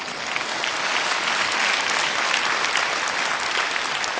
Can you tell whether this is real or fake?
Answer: real